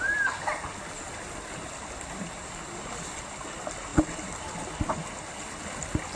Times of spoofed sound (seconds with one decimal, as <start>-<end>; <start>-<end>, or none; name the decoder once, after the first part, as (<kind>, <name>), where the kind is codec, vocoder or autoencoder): none